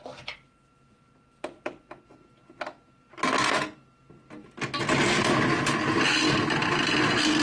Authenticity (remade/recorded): recorded